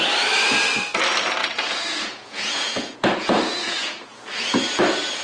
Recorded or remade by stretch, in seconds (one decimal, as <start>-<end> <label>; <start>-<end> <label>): 0.0-1.4 recorded; 1.4-4.5 remade; 4.5-5.2 recorded